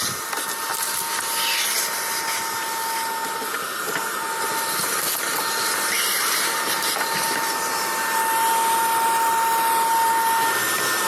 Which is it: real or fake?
real